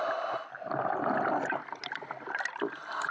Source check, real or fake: real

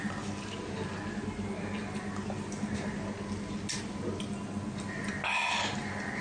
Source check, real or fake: real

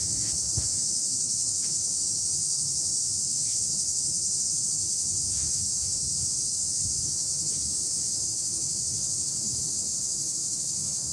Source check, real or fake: fake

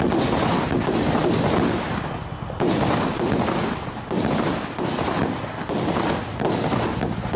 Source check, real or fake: real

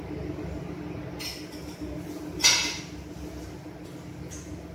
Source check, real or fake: real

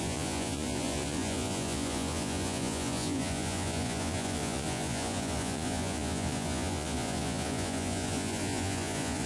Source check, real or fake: fake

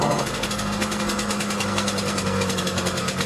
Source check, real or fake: fake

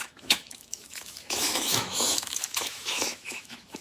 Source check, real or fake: fake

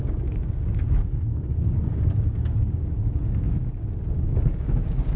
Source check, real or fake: fake